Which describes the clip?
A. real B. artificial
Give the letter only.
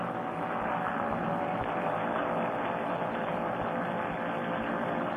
A